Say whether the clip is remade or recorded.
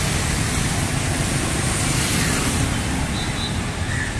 recorded